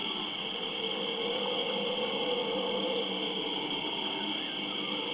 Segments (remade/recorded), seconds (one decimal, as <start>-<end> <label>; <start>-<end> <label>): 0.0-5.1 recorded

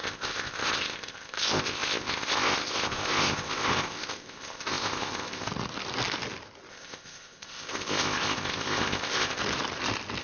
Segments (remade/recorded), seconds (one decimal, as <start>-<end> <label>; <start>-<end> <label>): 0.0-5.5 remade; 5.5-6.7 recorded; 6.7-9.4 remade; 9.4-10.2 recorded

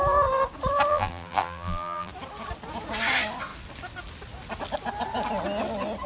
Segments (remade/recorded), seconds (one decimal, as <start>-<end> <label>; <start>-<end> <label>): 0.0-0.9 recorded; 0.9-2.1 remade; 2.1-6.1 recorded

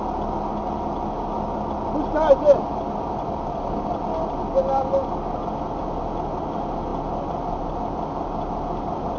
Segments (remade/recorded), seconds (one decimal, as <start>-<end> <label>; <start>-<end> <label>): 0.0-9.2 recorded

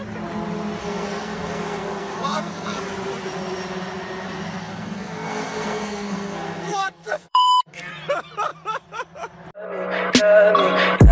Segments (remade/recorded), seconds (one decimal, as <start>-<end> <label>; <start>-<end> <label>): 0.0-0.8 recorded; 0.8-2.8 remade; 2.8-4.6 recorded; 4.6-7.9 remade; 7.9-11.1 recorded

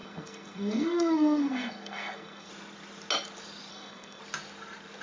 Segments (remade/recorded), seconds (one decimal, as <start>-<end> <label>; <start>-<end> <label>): 0.0-2.5 remade; 2.5-3.7 recorded; 3.7-4.2 remade; 4.2-5.0 recorded

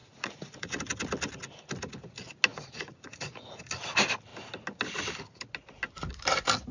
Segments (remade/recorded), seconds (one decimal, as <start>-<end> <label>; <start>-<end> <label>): 0.0-0.8 remade; 0.8-2.5 recorded; 2.5-3.6 remade; 3.6-6.7 recorded